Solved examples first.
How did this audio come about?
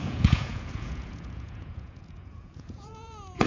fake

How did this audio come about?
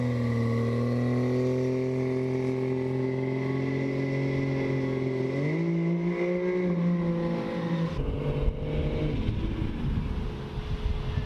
real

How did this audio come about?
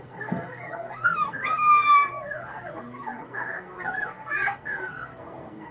fake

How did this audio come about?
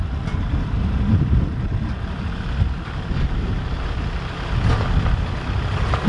real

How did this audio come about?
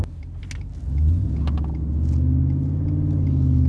real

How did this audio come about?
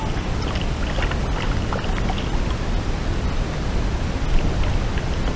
real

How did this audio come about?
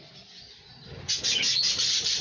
real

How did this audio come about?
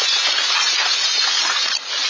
fake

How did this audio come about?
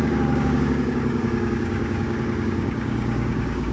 fake